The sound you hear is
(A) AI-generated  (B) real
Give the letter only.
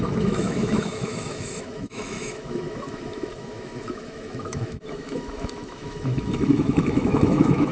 A